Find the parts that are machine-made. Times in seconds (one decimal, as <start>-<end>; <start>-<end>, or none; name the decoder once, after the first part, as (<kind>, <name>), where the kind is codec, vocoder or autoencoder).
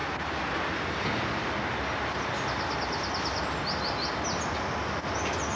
none